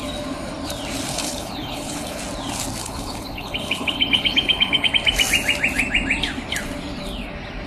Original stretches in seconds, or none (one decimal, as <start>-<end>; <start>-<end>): 0.0-1.1; 2.2-2.8; 4.9-7.7